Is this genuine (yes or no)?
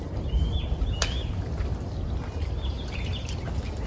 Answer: yes